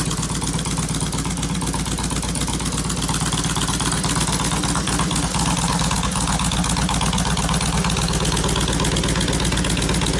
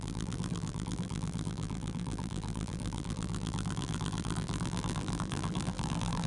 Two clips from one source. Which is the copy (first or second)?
second